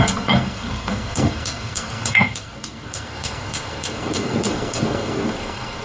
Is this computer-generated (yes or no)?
yes